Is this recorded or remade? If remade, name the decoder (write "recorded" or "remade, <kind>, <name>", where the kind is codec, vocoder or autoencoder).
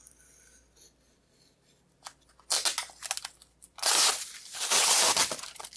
recorded